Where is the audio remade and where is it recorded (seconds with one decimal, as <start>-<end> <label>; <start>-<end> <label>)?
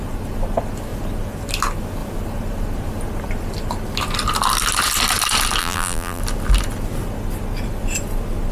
0.0-5.6 recorded; 5.6-6.2 remade; 6.2-8.5 recorded